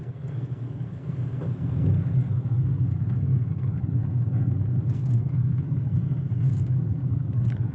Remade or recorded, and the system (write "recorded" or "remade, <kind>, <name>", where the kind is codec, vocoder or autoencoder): remade, codec, SNAC